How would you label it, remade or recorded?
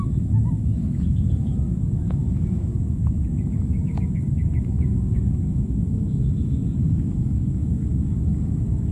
remade